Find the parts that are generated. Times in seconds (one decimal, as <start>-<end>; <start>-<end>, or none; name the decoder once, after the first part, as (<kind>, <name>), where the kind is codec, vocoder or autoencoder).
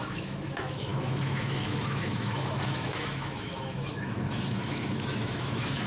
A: 0.0-5.9 (autoencoder, DAC-VAE)